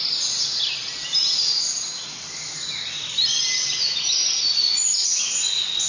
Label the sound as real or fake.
real